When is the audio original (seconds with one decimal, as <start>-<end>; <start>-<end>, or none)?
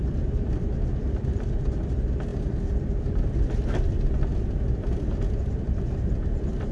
4.3-5.5